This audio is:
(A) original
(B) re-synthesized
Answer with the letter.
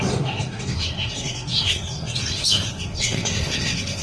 B